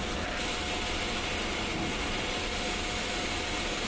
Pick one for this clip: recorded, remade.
recorded